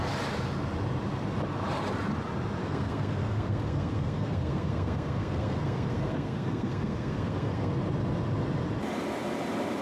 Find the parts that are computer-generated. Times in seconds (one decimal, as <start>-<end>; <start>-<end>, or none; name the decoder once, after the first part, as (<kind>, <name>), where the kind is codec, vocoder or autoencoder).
2.6-7.7 (codec, SNAC)